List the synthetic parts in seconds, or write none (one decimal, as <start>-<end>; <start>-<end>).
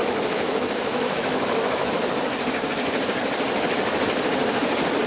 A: 0.0-1.9